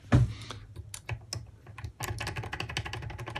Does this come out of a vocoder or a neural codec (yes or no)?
no